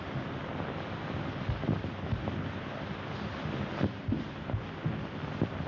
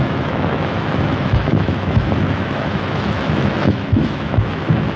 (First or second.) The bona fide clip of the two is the first